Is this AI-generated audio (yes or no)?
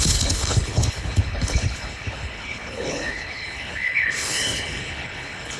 yes